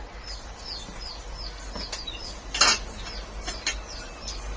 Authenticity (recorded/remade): recorded